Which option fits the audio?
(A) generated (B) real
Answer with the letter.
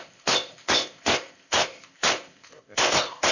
A